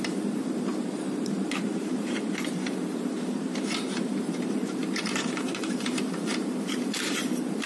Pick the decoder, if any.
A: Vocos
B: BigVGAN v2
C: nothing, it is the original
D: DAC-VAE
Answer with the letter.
B